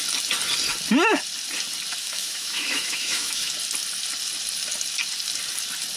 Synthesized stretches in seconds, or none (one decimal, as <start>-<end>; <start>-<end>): 2.0-3.5